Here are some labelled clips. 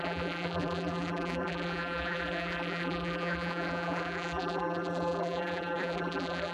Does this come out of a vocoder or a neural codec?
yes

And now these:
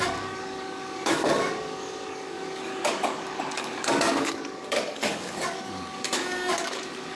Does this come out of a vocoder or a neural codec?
yes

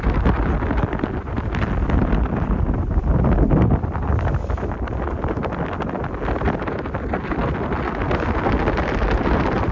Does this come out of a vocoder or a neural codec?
no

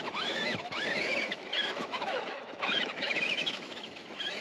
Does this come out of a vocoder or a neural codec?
yes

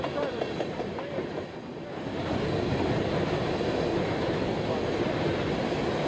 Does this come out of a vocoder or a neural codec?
no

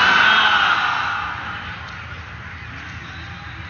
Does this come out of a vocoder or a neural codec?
no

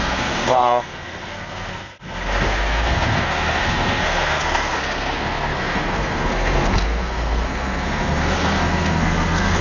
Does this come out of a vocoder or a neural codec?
yes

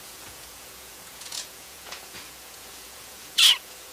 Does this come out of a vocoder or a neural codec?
yes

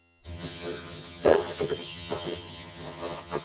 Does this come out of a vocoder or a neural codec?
yes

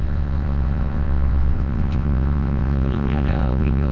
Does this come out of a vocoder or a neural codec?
yes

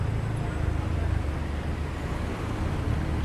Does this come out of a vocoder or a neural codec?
no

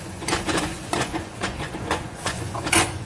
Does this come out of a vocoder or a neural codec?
yes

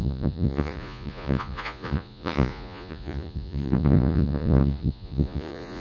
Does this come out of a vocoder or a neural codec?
yes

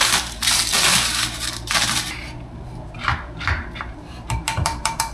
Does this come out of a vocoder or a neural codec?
yes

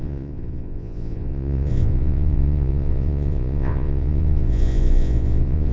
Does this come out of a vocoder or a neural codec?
yes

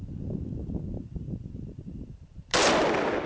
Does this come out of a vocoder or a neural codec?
no